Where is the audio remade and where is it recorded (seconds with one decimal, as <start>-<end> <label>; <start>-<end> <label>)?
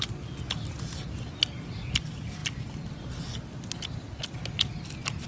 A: 0.0-5.3 recorded